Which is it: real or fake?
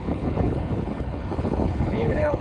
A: fake